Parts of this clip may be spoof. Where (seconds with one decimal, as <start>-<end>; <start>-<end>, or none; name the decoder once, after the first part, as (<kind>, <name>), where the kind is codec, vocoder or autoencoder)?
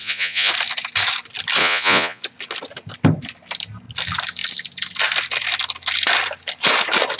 0.0-0.5 (vocoder, Vocos); 1.6-2.2